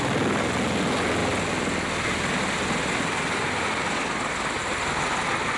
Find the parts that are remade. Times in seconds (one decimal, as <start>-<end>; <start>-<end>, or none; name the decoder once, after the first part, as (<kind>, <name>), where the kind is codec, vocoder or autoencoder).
none